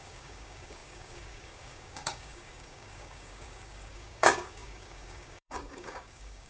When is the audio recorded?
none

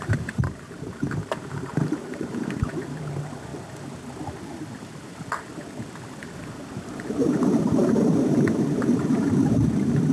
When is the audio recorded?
3.5-6.9

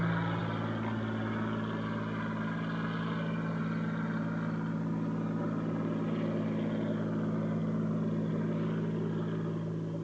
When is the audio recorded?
0.0-10.0

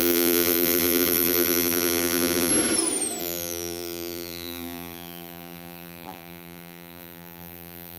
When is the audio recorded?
2.5-3.2

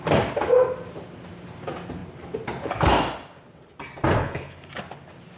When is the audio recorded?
0.0-4.2; 4.7-5.4

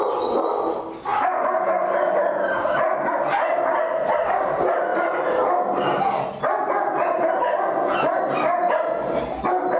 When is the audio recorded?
0.0-9.8

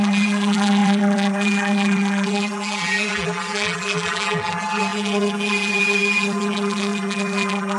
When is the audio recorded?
none